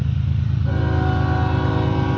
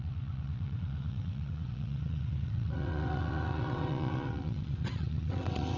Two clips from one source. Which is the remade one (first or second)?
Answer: second